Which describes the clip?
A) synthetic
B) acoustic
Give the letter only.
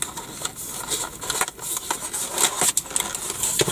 B